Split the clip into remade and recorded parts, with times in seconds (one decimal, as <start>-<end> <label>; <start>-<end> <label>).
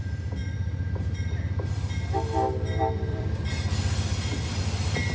0.0-0.4 recorded; 0.4-1.4 remade; 1.4-3.1 recorded; 3.1-4.6 remade; 4.6-5.1 recorded